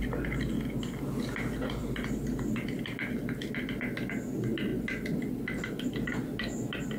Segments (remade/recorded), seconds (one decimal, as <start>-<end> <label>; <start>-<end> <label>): 0.0-7.0 recorded